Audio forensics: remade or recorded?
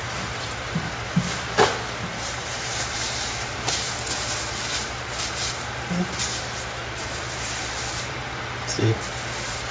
remade